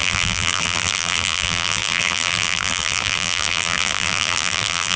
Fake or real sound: fake